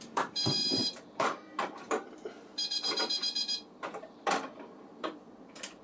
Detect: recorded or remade remade